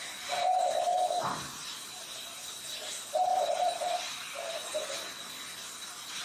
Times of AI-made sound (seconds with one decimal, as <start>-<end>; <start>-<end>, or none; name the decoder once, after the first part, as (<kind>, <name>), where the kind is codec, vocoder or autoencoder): 3.3-4.5 (vocoder, BigVGAN v2)